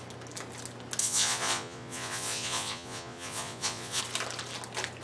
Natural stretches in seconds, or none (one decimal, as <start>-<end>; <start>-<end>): 0.0-1.0; 4.0-5.0